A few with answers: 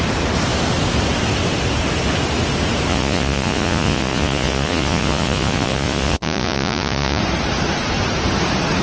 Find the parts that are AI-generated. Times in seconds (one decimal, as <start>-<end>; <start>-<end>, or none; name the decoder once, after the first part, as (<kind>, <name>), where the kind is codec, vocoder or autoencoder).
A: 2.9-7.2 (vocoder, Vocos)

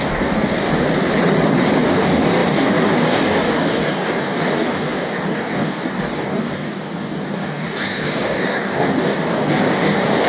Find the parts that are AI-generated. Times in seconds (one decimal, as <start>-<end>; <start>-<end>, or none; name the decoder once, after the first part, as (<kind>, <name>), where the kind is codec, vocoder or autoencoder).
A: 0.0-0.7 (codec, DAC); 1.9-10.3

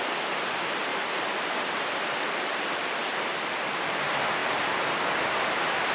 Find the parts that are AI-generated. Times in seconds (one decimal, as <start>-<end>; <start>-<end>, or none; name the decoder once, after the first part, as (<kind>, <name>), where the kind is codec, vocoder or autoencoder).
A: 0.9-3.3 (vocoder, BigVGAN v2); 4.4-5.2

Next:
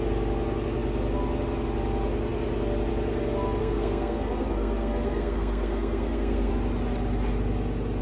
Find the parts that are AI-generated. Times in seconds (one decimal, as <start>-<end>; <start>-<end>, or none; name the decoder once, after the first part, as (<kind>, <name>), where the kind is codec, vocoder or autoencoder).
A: 3.6-6.5 (codec, SNAC)